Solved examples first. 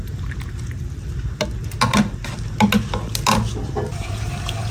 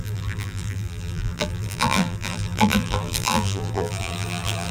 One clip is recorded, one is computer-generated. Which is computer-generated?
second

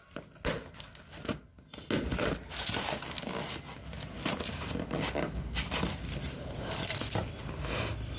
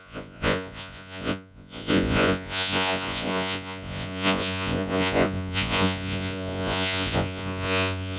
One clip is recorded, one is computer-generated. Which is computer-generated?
second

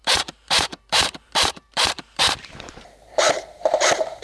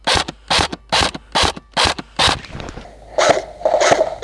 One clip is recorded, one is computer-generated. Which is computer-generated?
first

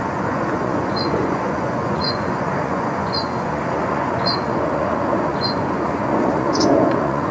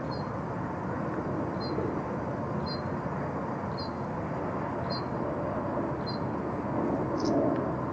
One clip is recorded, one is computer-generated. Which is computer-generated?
first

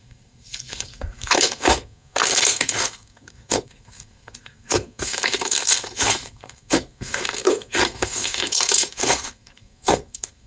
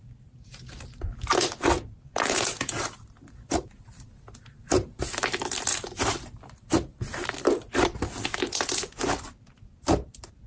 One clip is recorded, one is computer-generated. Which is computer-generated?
first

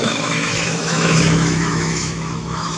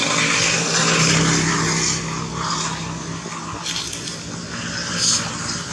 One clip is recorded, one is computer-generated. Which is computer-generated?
first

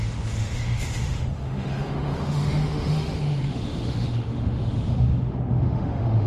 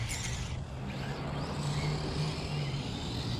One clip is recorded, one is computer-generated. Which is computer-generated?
first